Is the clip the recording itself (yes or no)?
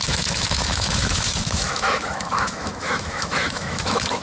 no